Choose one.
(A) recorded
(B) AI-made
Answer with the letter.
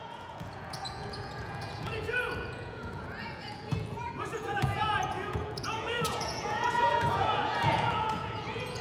B